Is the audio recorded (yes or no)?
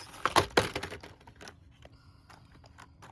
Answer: yes